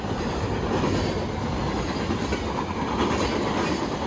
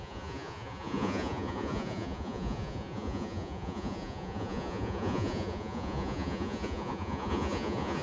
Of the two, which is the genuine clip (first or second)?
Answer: first